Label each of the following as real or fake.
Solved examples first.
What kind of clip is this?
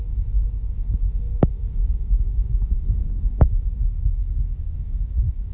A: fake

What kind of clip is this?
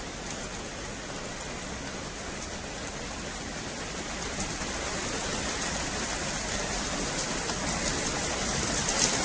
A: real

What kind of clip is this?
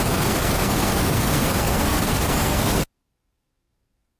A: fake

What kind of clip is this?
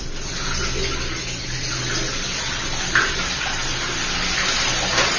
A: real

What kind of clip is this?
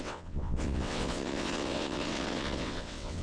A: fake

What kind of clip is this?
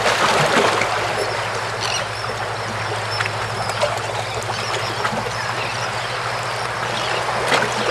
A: real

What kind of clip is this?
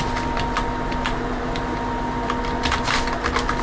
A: real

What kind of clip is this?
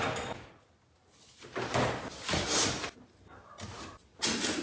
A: real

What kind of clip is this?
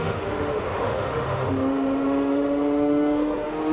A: fake